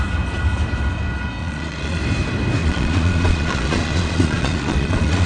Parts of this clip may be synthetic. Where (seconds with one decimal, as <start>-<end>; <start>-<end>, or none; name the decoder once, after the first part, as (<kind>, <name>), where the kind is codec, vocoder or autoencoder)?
1.4-2.0 (vocoder, Vocos); 2.6-5.3